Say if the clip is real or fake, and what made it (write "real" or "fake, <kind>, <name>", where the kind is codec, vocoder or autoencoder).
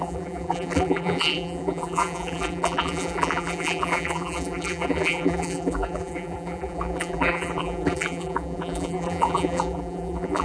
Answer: fake, vocoder, BigVGAN v2